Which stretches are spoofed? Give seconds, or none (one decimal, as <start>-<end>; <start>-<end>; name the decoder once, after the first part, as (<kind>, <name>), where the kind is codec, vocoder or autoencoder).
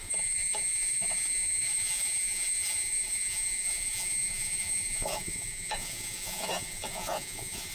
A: 0.0-7.7 (vocoder, Vocos)